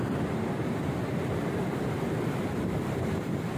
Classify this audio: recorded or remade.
remade